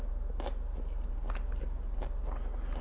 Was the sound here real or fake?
real